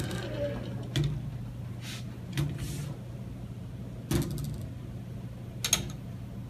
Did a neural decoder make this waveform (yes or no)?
no